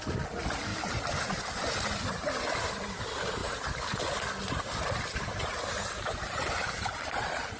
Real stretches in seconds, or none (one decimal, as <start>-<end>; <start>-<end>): 0.0-7.6